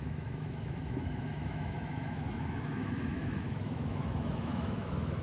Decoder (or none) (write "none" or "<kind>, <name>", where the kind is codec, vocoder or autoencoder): autoencoder, DAC-VAE